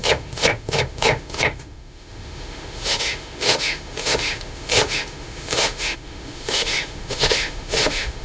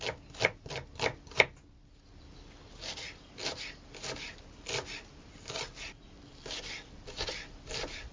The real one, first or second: second